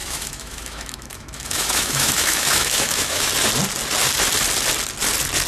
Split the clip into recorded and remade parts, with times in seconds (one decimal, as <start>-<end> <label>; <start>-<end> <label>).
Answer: 0.0-3.3 remade; 3.3-5.5 recorded